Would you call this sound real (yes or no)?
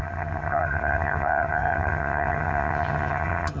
no